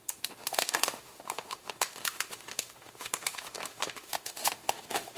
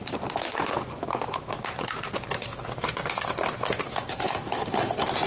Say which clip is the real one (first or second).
second